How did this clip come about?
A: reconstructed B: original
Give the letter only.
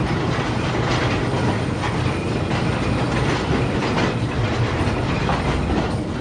B